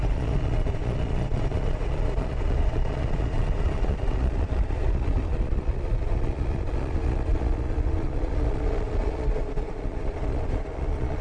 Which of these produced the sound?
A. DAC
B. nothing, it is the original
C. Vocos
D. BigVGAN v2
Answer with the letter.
C